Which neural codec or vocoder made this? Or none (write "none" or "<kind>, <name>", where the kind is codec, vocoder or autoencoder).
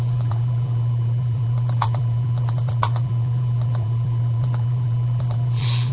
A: vocoder, BigVGAN v2